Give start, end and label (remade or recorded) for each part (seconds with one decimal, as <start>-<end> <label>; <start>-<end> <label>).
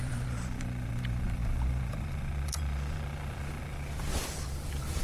0.0-5.0 remade